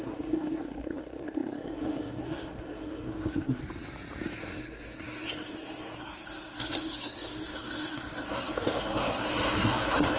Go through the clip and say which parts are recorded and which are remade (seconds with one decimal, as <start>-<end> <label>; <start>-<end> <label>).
0.0-3.6 remade; 3.6-4.4 recorded; 4.4-10.2 remade